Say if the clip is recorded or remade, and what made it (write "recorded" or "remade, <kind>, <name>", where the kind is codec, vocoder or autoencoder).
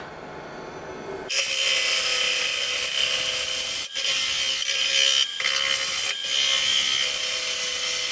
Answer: recorded